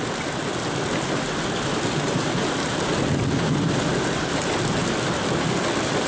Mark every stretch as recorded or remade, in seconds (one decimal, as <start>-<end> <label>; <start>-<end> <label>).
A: 0.0-6.1 recorded